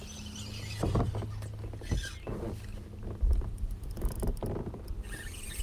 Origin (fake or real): real